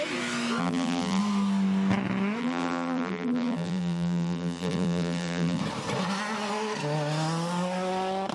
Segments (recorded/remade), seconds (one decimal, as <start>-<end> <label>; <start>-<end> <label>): 0.0-0.6 recorded; 0.6-1.2 remade; 1.2-2.4 recorded; 2.4-5.6 remade; 5.6-8.3 recorded